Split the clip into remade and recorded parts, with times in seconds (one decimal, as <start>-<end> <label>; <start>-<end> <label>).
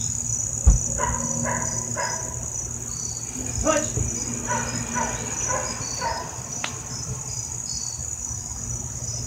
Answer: 0.0-9.3 recorded